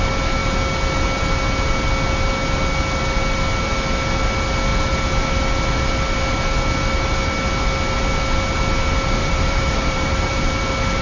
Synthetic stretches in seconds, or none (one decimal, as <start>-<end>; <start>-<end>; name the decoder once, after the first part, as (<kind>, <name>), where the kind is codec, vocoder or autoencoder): 9.2-10.6 (vocoder, BigVGAN v2)